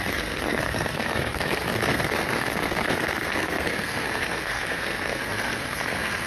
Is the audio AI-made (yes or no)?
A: yes